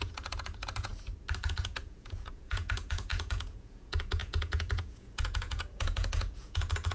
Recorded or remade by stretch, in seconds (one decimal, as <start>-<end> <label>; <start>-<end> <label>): 0.0-0.9 remade; 0.9-1.4 recorded; 1.4-6.9 remade